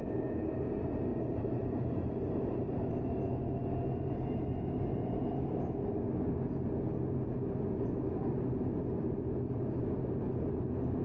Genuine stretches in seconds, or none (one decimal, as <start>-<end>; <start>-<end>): 0.0-1.1; 3.2-11.0